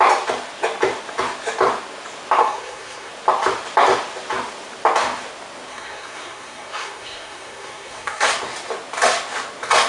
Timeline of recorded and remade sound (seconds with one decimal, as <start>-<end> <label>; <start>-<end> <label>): 0.0-2.4 recorded; 2.4-3.1 remade; 3.1-5.7 recorded; 5.7-8.3 remade; 8.3-9.9 recorded